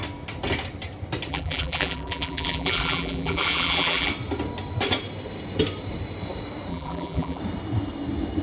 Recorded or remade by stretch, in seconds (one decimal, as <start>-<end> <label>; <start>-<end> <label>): 0.0-1.3 recorded; 1.3-4.1 remade; 4.1-6.7 recorded; 6.7-7.4 remade; 7.4-8.4 recorded